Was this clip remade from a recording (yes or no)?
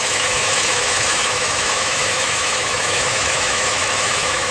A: yes